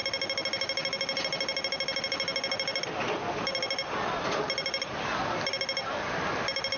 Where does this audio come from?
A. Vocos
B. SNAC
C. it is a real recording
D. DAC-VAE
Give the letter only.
C